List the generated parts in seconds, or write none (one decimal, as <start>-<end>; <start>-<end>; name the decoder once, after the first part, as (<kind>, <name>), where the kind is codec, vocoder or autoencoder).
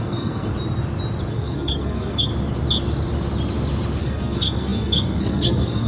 0.0-0.5 (codec, SNAC); 1.3-2.3; 4.0-5.9